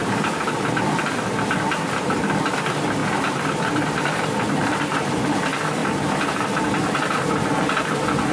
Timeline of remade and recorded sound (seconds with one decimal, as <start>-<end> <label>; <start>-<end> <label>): 0.0-1.0 remade; 1.0-3.0 recorded; 3.0-5.3 remade; 5.3-5.8 recorded; 5.8-7.9 remade; 7.9-8.3 recorded